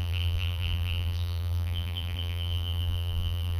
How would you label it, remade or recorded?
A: remade